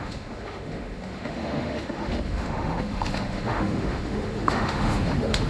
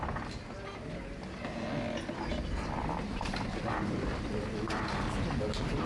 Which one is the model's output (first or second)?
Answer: first